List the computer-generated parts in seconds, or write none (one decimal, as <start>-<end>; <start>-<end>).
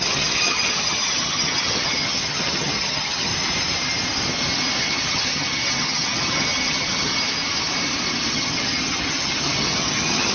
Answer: 0.0-3.3; 4.8-7.1; 8.3-10.3